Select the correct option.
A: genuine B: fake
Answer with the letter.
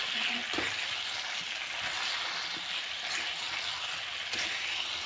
A